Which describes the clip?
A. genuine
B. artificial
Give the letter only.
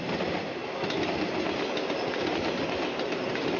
A